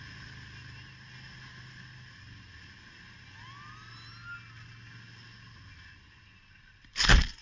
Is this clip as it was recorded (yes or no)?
yes